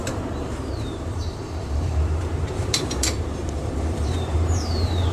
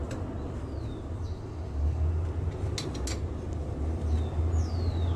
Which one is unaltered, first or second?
second